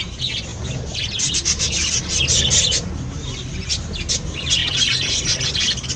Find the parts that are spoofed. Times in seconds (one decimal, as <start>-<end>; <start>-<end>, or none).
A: none